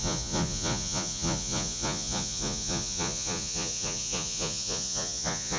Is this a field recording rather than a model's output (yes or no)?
no